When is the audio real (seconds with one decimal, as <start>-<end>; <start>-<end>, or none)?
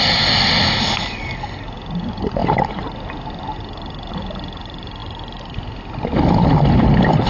0.0-7.3